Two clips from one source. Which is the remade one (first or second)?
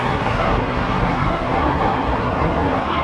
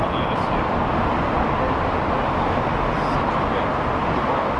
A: first